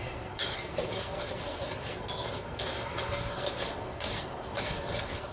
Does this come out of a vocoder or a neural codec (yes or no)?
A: yes